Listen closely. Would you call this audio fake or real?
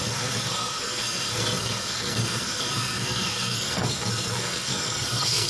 fake